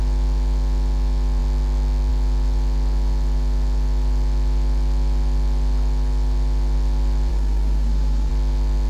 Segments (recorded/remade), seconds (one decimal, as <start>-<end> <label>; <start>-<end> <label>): 0.0-7.3 recorded; 7.3-8.3 remade; 8.3-8.9 recorded